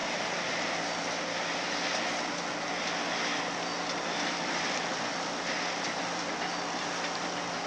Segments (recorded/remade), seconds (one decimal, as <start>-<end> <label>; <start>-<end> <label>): 0.0-7.7 recorded